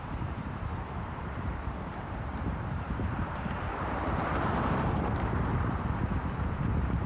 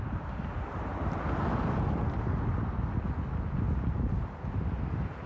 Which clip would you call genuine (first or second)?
second